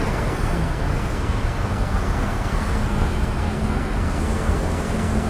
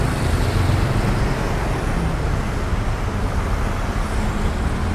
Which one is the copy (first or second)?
first